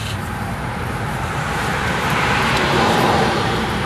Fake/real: fake